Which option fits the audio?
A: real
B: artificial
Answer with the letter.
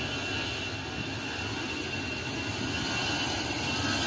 A